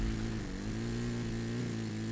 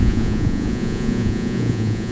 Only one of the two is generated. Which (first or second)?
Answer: second